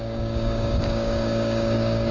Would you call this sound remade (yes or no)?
yes